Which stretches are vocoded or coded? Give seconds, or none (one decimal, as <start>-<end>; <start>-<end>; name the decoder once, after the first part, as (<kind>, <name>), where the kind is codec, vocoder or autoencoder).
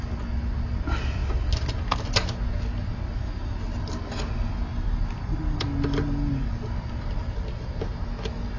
none